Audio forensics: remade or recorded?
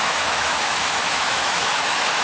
remade